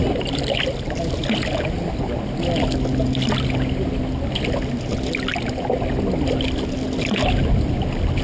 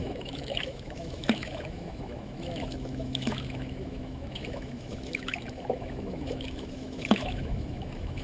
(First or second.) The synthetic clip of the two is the second